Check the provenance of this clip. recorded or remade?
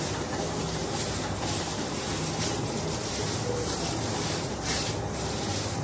remade